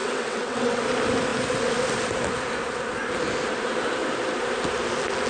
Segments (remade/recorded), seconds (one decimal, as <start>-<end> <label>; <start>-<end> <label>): 0.0-0.8 remade; 0.8-5.3 recorded